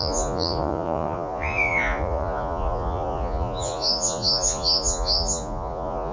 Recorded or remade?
remade